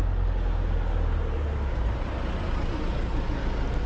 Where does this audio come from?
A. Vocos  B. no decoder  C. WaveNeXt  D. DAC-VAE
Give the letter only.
B